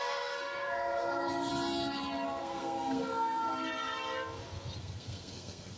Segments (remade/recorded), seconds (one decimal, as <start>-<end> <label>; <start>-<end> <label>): 0.0-1.5 remade; 1.5-2.4 recorded; 2.4-3.5 remade; 3.5-4.8 recorded; 4.8-5.8 remade